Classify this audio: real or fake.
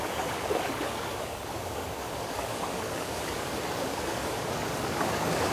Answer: fake